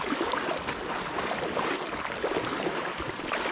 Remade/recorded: recorded